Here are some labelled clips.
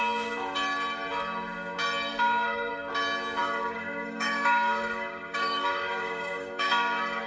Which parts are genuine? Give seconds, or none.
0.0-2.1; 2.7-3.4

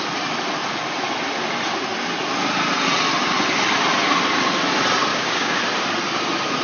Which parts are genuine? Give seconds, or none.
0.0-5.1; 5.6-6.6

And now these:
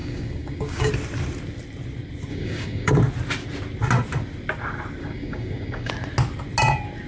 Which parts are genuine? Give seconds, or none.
0.9-2.3; 2.9-5.0; 5.9-7.1

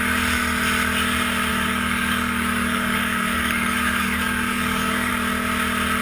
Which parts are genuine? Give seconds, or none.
0.0-1.5; 5.1-6.0